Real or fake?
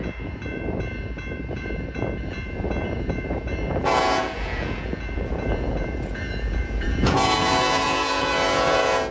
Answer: fake